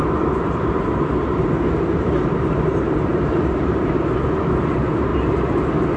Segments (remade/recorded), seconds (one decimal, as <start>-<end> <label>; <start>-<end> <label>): 0.0-5.1 remade; 5.1-6.0 recorded